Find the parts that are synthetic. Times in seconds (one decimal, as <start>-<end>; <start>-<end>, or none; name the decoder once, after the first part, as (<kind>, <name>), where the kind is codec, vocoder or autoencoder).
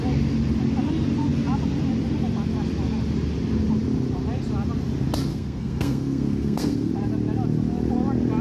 5.3-6.9 (codec, SNAC)